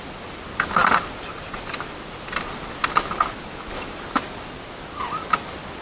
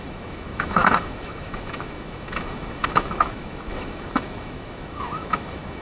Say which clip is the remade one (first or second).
second